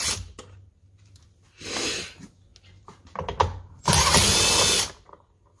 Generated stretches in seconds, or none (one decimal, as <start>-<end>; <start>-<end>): none